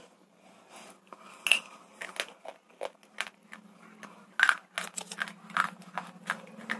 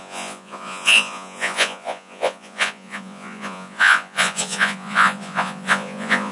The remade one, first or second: second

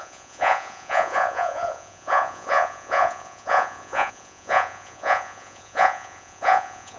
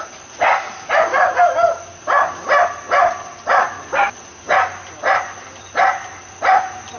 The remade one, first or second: first